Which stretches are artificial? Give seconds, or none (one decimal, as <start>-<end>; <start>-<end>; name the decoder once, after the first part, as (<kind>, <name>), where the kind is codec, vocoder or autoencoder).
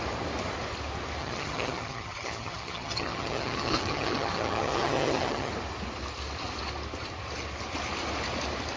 1.2-5.5 (vocoder, HiFi-GAN)